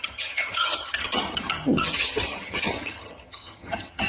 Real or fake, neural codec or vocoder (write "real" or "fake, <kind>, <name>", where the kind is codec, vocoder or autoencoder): fake, vocoder, HiFi-GAN